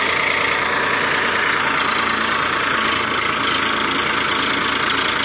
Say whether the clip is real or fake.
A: real